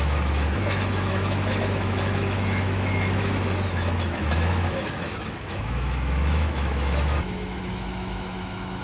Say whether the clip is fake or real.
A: fake